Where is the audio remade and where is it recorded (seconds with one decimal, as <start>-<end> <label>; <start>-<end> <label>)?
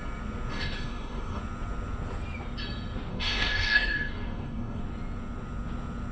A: 0.0-0.5 recorded; 0.5-1.4 remade; 1.4-3.1 recorded; 3.1-4.8 remade; 4.8-6.1 recorded